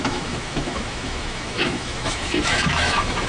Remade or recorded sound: remade